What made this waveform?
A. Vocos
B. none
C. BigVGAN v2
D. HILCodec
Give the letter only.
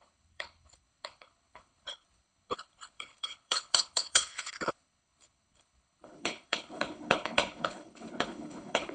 D